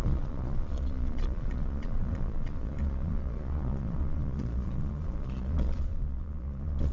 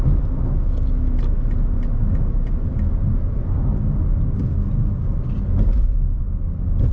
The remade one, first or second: first